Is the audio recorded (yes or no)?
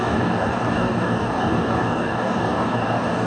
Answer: no